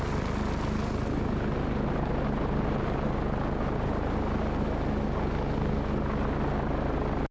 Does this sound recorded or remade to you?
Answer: recorded